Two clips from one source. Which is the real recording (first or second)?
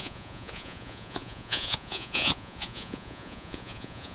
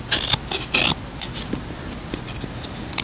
second